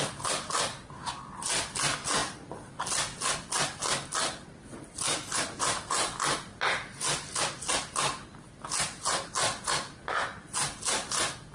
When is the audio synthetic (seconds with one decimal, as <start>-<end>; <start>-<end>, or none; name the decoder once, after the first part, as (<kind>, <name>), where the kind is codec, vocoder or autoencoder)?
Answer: none